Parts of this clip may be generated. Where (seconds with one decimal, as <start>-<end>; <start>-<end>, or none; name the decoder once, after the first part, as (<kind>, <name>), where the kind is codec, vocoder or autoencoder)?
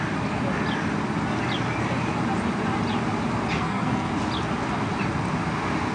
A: 3.5-4.1 (codec, SNAC)